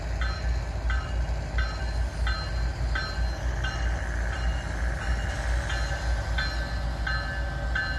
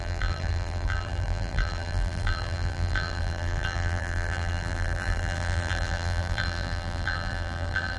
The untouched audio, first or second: first